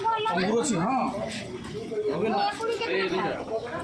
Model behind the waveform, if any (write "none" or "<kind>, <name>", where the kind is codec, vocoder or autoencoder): none